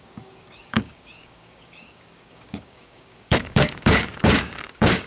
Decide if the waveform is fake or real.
fake